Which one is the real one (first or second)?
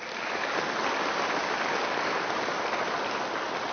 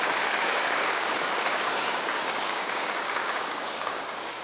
first